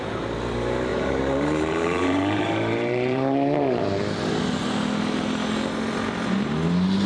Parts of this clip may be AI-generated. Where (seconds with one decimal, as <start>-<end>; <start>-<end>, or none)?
0.9-3.8